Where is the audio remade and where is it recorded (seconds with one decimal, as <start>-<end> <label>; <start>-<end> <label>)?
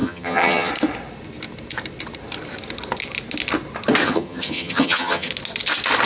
0.0-0.7 remade; 0.7-4.0 recorded; 4.0-5.3 remade; 5.3-6.1 recorded